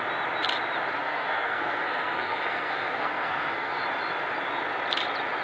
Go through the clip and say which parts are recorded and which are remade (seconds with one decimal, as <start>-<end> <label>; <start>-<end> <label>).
0.0-1.0 recorded; 1.0-3.8 remade; 3.8-5.4 recorded